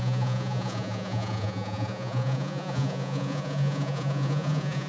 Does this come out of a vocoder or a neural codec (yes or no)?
yes